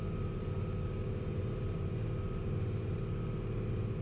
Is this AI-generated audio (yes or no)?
no